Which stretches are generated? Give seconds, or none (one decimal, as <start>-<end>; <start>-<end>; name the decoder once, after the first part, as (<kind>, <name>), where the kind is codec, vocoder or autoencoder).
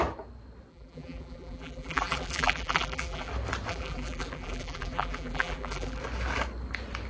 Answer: 0.7-3.3 (vocoder, BigVGAN v2); 3.7-6.0